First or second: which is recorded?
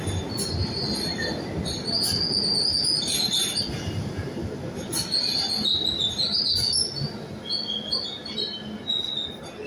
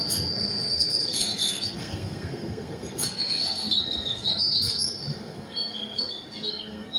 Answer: first